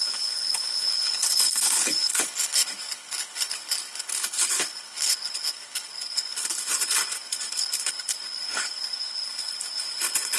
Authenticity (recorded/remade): remade